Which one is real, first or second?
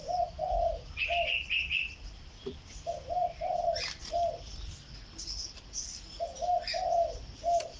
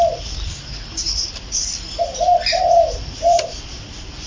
first